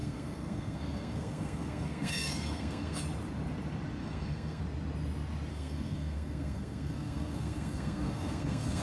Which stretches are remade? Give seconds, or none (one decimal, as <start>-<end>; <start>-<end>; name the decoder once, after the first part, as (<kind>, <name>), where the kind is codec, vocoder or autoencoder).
0.0-3.0 (codec, SNAC); 4.0-4.6; 5.5-8.8